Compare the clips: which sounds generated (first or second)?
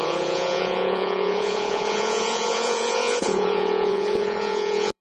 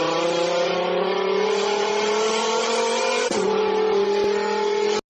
first